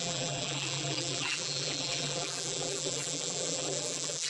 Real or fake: fake